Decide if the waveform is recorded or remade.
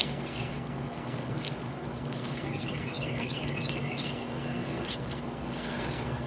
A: remade